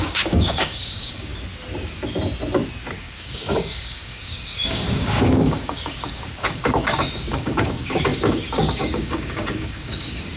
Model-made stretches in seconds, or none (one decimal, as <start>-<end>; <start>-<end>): 0.0-1.3; 3.0-10.4